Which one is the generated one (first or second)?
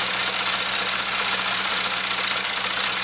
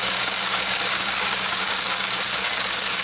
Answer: second